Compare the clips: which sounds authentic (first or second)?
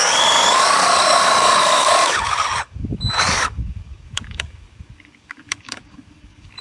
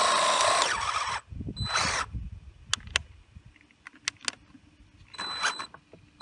second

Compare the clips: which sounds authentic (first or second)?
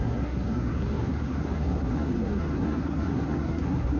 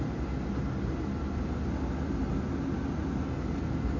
second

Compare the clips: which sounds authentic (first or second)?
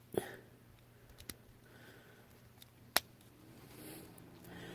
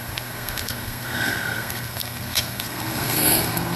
first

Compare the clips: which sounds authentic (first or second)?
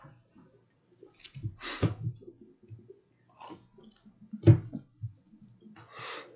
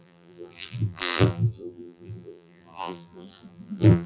first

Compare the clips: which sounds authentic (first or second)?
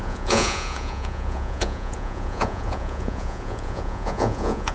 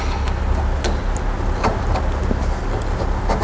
second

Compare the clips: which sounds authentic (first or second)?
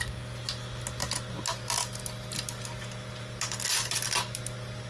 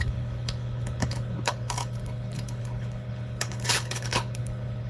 first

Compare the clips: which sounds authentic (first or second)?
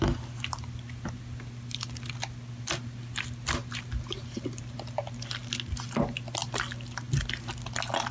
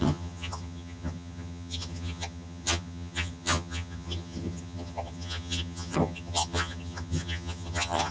first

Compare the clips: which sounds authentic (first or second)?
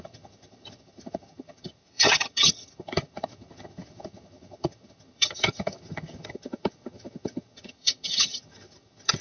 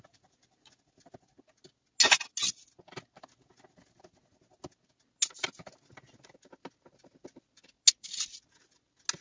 second